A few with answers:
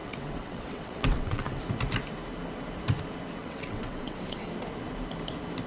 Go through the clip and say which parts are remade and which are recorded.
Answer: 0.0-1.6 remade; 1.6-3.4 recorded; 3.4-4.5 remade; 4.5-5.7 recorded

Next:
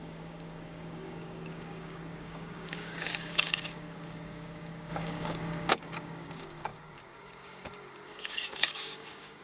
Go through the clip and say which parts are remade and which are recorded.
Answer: 0.0-9.4 remade

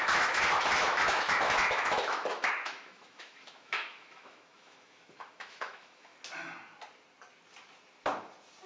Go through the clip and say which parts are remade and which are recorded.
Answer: 0.0-6.1 remade; 6.1-8.7 recorded

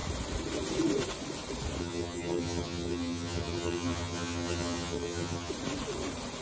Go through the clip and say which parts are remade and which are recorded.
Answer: 0.0-1.8 recorded; 1.8-5.5 remade; 5.5-6.4 recorded